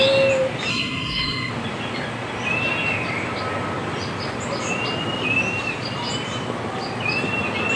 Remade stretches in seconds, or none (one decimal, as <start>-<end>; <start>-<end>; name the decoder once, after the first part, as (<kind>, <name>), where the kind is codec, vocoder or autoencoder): 0.7-1.5 (codec, SNAC)